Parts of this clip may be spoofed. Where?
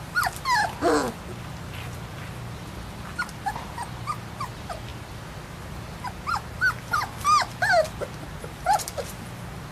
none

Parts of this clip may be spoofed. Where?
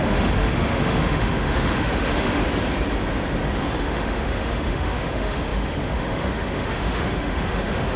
0.0-2.4 (autoencoder, DAC-VAE); 3.8-8.0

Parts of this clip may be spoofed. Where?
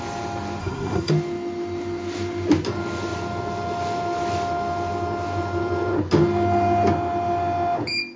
0.6-1.1 (codec, SNAC)